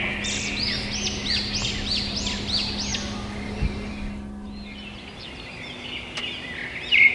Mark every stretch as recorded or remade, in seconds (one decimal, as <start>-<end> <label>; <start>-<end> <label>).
0.0-7.1 recorded